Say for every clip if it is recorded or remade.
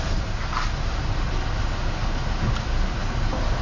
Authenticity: recorded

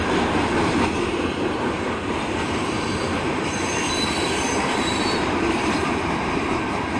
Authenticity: remade